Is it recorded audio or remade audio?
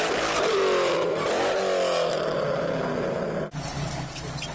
recorded